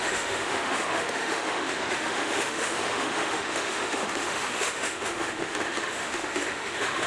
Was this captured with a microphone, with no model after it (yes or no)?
no